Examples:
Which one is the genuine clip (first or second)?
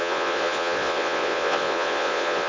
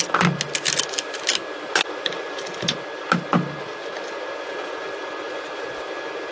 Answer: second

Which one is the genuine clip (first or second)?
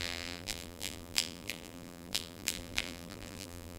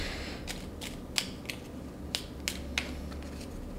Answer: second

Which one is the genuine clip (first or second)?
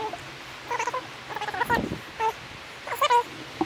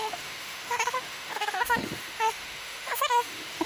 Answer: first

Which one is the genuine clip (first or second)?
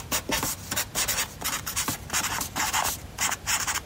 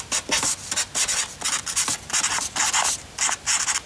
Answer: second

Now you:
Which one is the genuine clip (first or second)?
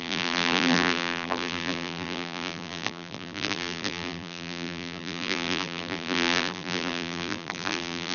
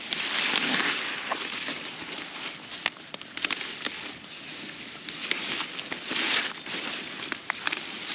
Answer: second